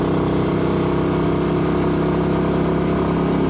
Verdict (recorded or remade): recorded